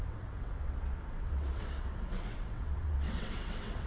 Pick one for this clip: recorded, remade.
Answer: remade